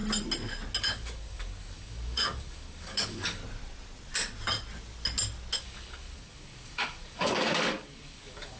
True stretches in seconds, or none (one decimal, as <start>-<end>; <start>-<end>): 0.0-0.8; 3.4-5.6